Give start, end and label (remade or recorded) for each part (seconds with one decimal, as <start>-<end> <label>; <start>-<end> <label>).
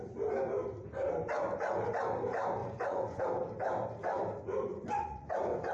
0.0-2.6 recorded; 2.6-3.2 remade; 3.2-4.7 recorded; 4.7-5.3 remade; 5.3-5.7 recorded